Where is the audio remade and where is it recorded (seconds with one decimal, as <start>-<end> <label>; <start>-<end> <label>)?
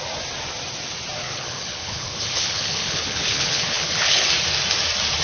0.0-1.2 recorded; 1.2-4.3 remade; 4.3-5.2 recorded